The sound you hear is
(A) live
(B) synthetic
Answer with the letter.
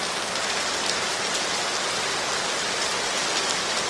A